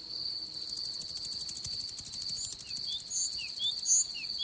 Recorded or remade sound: recorded